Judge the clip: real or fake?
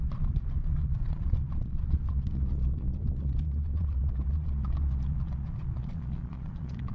fake